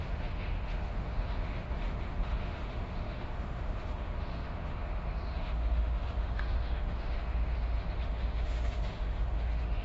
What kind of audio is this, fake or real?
fake